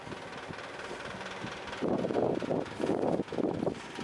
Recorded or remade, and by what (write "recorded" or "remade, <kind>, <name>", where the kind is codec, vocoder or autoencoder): recorded